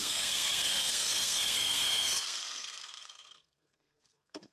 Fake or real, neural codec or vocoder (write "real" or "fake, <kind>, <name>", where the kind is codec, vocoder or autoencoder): fake, codec, SNAC